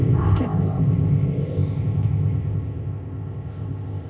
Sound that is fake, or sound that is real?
fake